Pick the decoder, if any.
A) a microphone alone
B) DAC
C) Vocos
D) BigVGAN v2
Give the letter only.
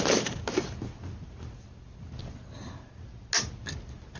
A